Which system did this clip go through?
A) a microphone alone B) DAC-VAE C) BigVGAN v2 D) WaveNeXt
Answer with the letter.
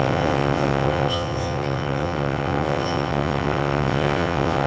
D